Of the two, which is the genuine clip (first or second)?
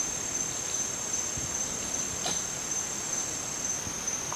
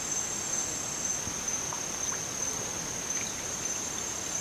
second